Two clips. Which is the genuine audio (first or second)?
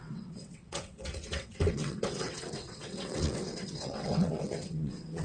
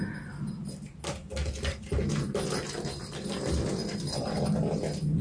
second